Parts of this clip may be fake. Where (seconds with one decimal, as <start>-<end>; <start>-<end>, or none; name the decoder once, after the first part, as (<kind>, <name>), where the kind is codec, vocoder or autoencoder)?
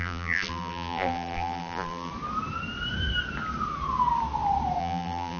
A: 0.0-2.1 (vocoder, BigVGAN v2); 4.8-5.4